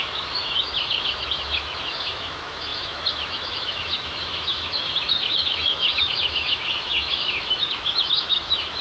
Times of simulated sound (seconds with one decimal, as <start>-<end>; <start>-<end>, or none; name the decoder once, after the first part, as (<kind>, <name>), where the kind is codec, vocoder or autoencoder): 0.0-8.8 (autoencoder, DAC-VAE)